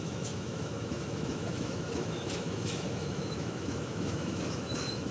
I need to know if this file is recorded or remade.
remade